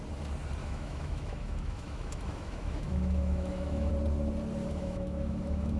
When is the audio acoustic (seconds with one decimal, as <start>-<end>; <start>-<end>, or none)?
0.0-0.6; 3.9-4.6